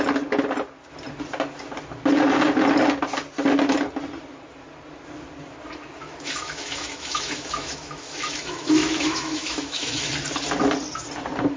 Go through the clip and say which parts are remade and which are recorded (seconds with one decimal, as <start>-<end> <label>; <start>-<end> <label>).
0.0-6.0 recorded; 6.0-10.1 remade; 10.1-11.6 recorded